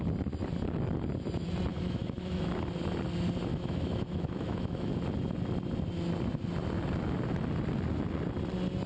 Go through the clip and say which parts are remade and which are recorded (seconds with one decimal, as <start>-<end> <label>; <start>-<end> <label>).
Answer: 0.0-1.7 recorded; 1.7-2.5 remade; 2.5-3.5 recorded; 3.5-4.9 remade; 4.9-8.9 recorded